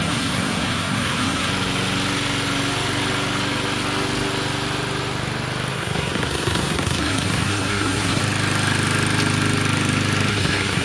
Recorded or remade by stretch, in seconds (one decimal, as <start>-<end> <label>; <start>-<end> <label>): 0.0-1.5 remade; 1.5-5.7 recorded; 5.7-8.2 remade; 8.2-10.3 recorded; 10.3-10.8 remade